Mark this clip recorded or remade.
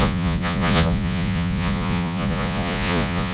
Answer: remade